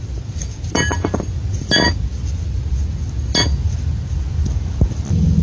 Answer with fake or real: real